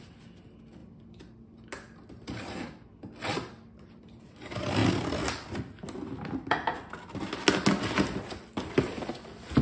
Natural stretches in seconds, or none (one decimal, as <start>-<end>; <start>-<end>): 0.0-9.6